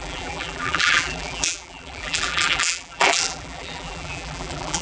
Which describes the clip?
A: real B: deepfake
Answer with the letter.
B